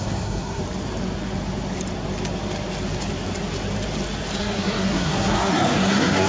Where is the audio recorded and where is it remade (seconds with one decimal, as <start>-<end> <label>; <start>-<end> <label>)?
0.0-0.6 remade; 0.6-4.4 recorded; 4.4-6.3 remade